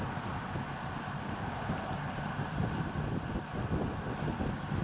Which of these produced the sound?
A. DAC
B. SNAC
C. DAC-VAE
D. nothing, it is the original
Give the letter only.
D